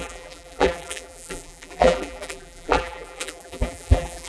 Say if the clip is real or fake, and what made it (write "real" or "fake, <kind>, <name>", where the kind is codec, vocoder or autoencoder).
fake, vocoder, BigVGAN v2